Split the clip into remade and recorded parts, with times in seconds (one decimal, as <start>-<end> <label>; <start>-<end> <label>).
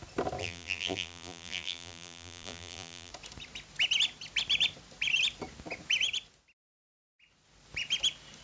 0.0-0.4 recorded; 0.4-3.1 remade; 3.1-8.4 recorded